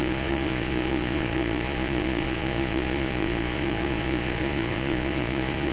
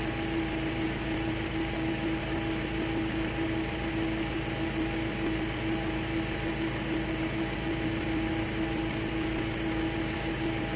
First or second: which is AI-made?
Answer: first